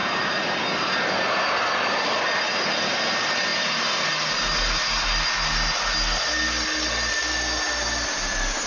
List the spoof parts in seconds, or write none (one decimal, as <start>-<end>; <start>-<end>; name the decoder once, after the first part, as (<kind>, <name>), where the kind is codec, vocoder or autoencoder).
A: none